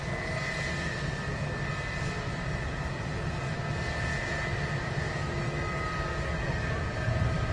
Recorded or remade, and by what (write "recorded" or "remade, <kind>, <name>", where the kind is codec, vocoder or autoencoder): recorded